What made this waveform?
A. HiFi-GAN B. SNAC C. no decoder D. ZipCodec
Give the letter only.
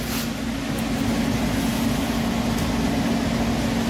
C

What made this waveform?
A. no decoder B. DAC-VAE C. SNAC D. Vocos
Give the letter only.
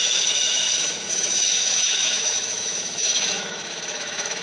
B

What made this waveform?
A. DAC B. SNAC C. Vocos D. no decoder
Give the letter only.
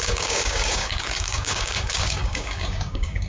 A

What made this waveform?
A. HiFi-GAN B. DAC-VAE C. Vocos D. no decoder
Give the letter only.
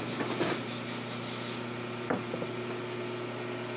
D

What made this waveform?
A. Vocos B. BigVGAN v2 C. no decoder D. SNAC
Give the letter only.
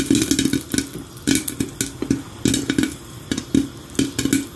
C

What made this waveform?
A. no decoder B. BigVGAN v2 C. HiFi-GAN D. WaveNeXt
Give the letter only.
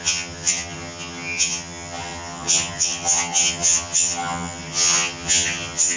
C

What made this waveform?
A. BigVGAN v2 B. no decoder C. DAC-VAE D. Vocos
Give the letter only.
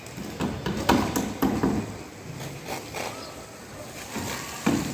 B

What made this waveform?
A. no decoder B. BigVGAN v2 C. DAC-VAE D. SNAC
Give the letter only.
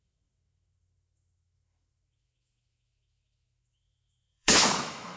C